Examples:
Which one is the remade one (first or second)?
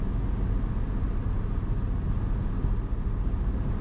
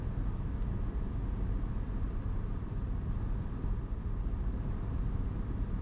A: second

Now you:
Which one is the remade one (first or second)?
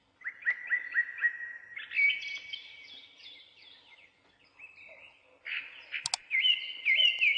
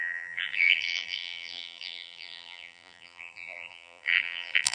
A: second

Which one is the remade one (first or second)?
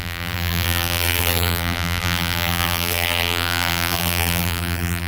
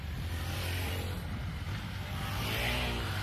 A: first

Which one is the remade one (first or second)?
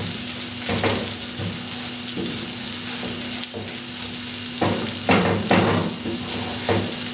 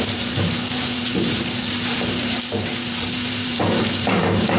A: second